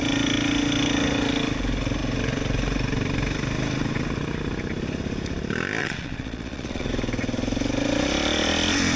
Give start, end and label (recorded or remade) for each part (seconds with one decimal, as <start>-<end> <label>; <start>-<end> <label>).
0.0-5.8 recorded; 5.8-6.9 remade; 6.9-9.0 recorded